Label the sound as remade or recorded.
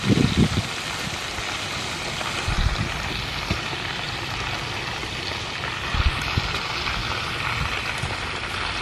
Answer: recorded